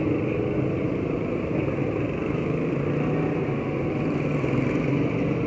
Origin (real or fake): real